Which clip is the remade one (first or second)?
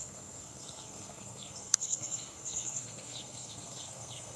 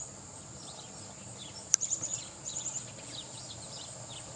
first